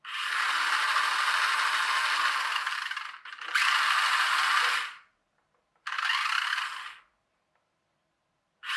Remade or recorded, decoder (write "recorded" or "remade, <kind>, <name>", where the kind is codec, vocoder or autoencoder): recorded